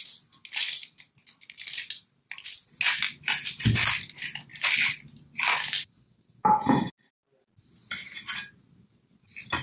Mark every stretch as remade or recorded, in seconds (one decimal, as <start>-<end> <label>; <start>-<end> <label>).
0.0-9.6 recorded